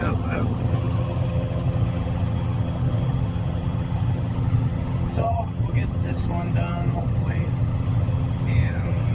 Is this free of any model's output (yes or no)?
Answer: no